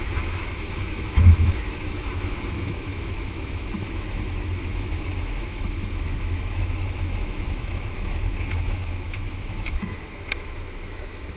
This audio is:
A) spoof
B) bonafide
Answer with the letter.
A